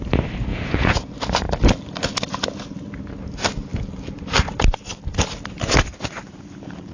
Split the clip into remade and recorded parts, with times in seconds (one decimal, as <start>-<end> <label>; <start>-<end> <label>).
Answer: 0.0-0.5 recorded; 0.5-1.1 remade; 1.1-6.9 recorded